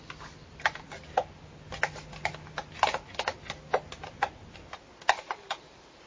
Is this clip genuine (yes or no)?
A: yes